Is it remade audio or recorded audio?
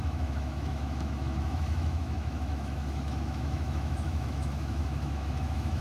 remade